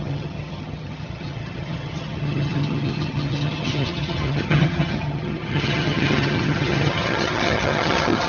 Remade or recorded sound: remade